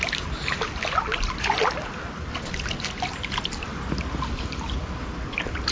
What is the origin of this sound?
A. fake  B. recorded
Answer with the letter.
B